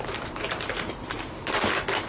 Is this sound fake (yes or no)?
yes